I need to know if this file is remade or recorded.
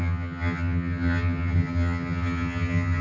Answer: remade